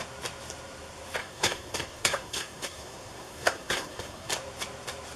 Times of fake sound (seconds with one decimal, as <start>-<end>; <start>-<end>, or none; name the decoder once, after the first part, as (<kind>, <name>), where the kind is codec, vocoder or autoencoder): 1.2-4.3 (codec, SNAC)